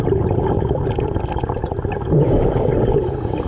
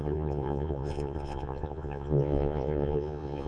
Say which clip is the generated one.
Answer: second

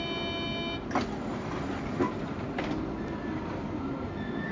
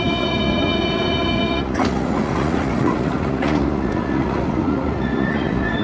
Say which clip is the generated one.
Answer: second